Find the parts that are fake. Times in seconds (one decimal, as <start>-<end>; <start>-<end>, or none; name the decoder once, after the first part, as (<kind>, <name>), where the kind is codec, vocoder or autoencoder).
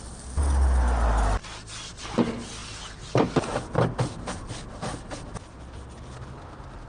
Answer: none